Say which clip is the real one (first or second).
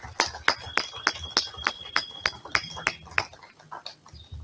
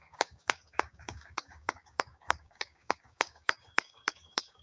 first